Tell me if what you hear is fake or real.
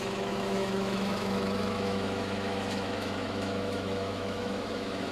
fake